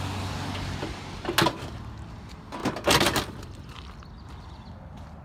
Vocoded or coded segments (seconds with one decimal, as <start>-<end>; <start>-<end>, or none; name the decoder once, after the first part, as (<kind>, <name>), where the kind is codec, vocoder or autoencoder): none